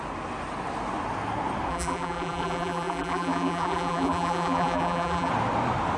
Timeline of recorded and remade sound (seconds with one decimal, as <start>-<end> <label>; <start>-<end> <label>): 0.0-1.7 recorded; 1.7-5.3 remade; 5.3-6.0 recorded